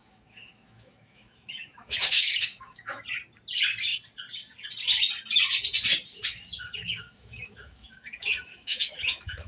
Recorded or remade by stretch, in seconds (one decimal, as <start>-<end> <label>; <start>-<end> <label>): 0.0-3.0 remade; 3.0-6.2 recorded; 6.2-9.5 remade